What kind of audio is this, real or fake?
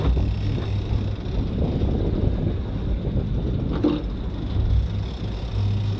real